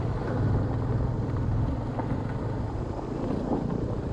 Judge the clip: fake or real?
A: real